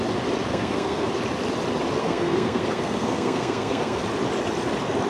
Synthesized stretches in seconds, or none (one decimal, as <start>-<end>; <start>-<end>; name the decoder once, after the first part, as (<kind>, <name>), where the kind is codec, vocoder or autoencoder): 0.5-1.1 (codec, SNAC); 2.0-4.0